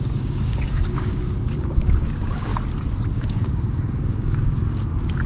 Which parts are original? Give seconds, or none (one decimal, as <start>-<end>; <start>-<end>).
2.5-3.1